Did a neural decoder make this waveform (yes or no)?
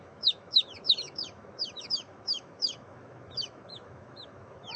yes